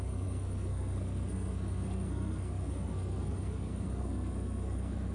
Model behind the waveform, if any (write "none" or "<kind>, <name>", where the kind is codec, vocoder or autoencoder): codec, SNAC